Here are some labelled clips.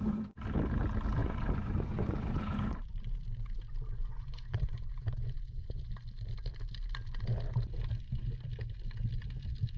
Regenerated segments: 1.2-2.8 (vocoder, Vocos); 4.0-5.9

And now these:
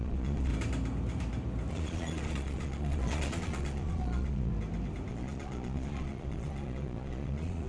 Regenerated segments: 0.0-0.5 (vocoder, Vocos); 1.7-4.5; 5.1-7.7

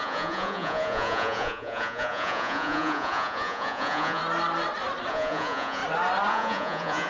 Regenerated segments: 0.0-4.2 (vocoder, Vocos); 5.1-5.8; 6.3-7.1

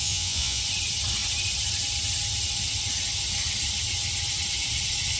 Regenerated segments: 0.0-0.6 (vocoder, Vocos)

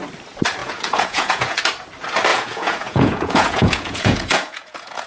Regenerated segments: 0.6-1.6 (vocoder, Vocos); 2.3-5.1